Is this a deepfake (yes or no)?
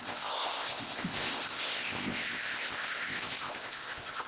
yes